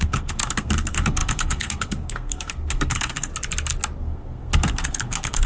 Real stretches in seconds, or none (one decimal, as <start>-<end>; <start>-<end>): 3.3-4.0